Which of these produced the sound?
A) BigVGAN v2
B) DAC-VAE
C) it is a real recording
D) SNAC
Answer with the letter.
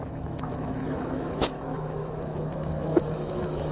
B